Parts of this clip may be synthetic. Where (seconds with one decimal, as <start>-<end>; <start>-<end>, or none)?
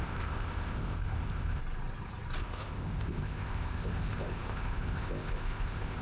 0.0-1.6; 2.4-6.0